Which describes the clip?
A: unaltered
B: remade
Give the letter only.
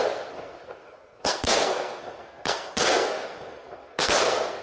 B